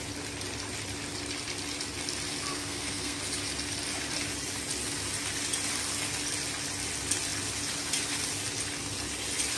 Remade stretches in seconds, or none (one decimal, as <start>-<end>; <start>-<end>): 2.5-3.2